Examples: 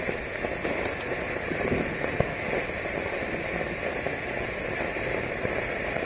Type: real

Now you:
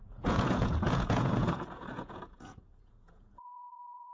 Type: fake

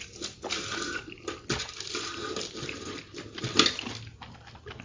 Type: real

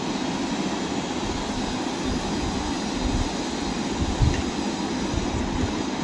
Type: real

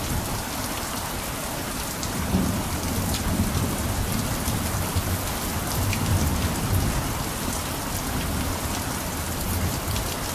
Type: fake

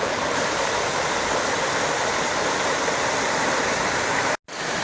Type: real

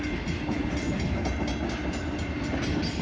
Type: real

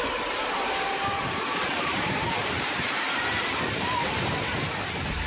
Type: fake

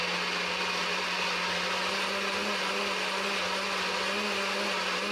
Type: real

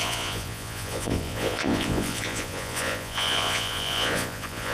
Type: fake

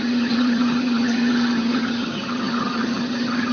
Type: fake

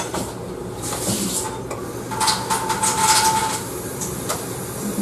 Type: real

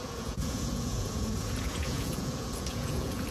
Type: fake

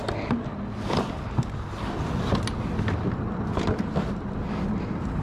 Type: real